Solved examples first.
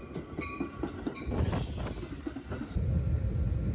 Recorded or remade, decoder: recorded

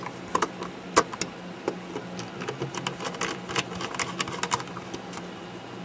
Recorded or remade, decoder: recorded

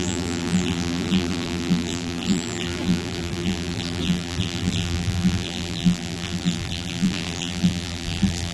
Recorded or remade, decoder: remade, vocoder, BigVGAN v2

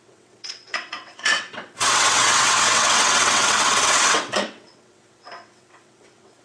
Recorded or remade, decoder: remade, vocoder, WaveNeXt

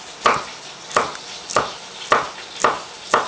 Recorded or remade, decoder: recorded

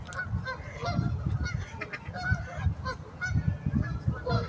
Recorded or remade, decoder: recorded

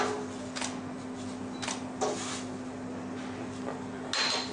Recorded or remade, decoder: recorded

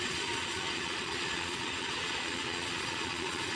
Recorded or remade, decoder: remade, vocoder, Vocos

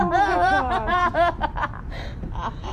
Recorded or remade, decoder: remade, vocoder, BigVGAN v2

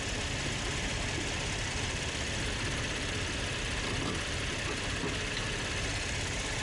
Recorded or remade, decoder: recorded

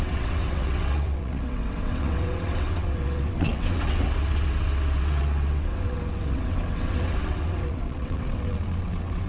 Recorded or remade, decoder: remade, vocoder, WaveNeXt